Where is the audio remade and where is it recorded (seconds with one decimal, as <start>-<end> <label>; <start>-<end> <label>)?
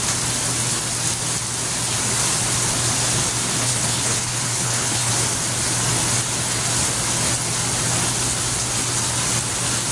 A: 0.0-3.6 recorded; 3.6-5.1 remade; 5.1-9.9 recorded